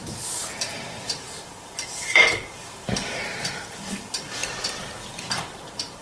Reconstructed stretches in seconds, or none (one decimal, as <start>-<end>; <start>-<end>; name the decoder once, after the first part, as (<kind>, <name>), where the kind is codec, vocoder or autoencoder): 0.0-6.0 (vocoder, BigVGAN v2)